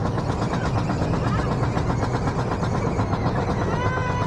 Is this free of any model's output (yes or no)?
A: yes